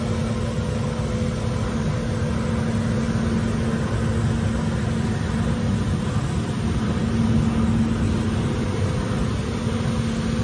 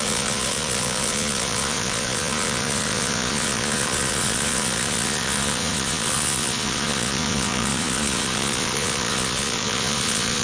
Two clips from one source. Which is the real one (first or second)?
first